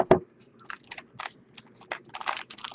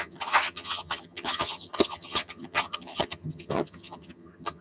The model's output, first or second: second